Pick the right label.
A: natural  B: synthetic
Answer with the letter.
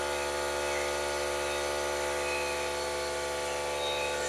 A